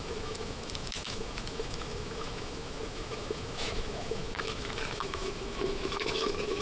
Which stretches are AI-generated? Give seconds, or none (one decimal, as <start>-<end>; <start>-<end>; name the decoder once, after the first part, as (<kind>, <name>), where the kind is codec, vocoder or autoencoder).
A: 0.0-6.6 (autoencoder, DAC-VAE)